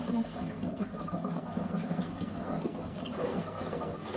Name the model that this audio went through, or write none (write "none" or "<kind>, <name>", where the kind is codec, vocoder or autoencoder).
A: codec, SNAC